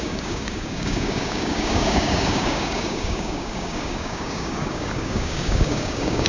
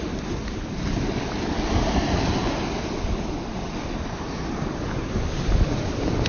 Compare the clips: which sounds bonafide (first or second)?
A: second